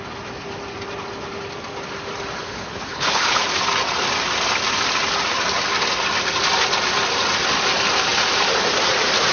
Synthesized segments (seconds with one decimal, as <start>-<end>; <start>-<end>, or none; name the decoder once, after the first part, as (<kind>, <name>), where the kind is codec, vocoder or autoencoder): 2.4-3.4 (codec, HILCodec)